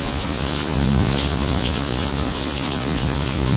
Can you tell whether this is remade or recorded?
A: remade